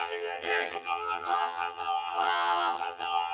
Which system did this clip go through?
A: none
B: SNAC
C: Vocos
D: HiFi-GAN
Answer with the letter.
D